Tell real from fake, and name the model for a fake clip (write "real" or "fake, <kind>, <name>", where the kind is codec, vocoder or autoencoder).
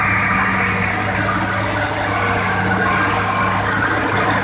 real